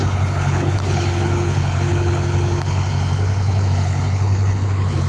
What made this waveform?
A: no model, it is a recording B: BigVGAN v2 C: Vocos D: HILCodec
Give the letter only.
D